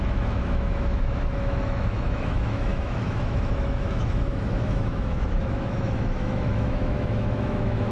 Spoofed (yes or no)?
yes